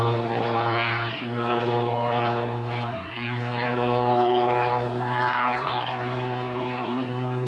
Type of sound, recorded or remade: remade